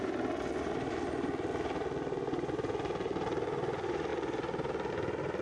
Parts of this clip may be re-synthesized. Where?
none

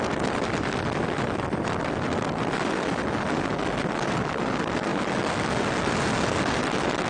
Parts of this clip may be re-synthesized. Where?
none

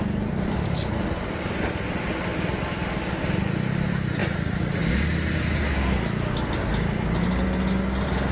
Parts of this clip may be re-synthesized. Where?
4.2-4.8 (vocoder, Vocos)

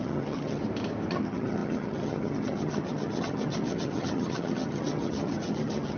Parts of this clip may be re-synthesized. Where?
0.0-0.6 (vocoder, HiFi-GAN); 1.1-6.0

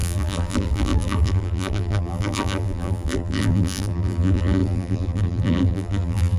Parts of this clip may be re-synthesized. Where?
0.0-6.4 (vocoder, BigVGAN v2)